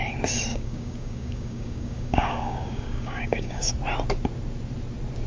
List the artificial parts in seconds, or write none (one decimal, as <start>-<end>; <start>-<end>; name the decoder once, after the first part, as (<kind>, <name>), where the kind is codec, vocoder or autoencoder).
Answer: 0.5-3.7 (codec, DAC)